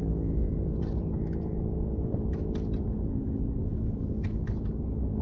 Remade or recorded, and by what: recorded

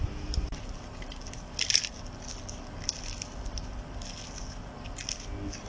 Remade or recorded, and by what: recorded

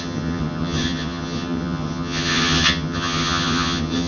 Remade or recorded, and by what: remade, vocoder, HiFi-GAN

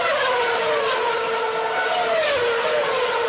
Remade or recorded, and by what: recorded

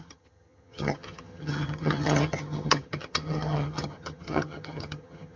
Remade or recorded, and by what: remade, vocoder, HiFi-GAN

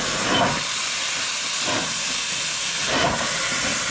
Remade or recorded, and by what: recorded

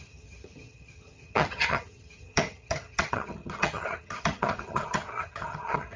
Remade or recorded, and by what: remade, vocoder, HiFi-GAN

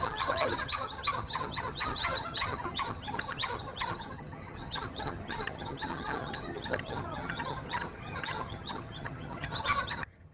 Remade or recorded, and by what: remade, vocoder, HiFi-GAN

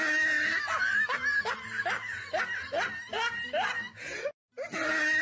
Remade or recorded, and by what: recorded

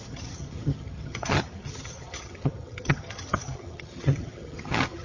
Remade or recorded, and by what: remade, vocoder, HiFi-GAN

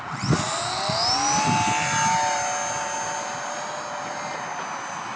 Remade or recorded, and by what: recorded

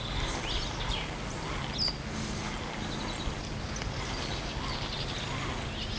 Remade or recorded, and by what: recorded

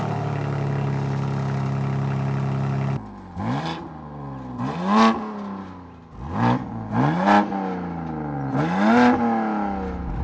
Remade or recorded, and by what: recorded